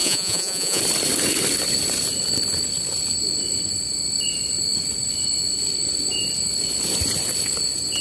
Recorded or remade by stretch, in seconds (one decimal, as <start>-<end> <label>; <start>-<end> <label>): 0.0-0.8 remade; 0.8-8.0 recorded